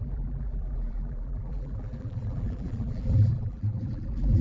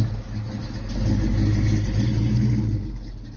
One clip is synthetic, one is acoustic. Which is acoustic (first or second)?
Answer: second